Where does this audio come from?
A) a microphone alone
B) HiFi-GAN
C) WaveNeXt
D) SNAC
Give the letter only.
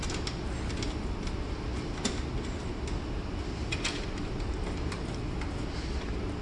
A